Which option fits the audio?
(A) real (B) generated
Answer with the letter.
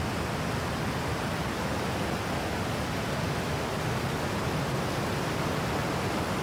A